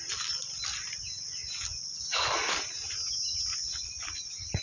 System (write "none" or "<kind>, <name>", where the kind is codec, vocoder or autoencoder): none